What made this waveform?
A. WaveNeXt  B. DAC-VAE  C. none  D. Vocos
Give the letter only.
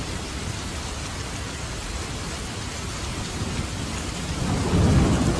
C